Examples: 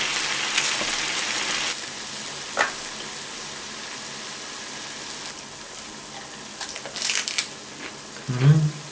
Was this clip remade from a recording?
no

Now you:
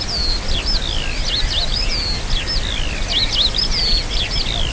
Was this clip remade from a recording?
no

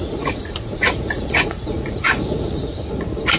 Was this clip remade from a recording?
yes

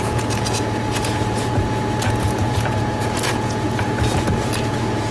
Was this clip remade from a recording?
yes